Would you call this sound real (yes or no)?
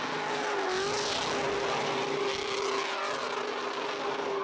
yes